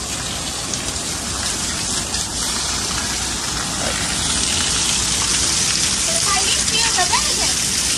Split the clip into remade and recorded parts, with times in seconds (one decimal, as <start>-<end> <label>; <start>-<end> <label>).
0.0-2.3 recorded; 2.3-3.0 remade; 3.0-8.0 recorded